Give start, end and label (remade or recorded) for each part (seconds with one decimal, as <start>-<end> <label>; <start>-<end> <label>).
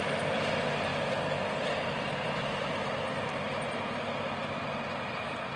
0.0-5.6 recorded